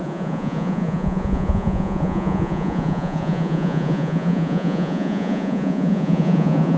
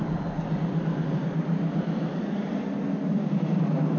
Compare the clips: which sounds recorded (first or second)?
second